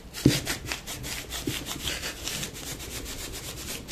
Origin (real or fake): real